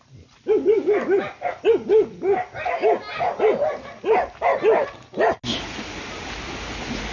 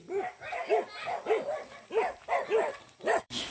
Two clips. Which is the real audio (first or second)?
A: first